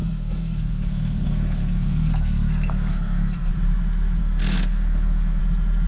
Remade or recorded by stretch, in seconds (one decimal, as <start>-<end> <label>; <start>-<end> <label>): 0.0-3.5 remade; 3.5-4.2 recorded; 4.2-5.4 remade; 5.4-5.9 recorded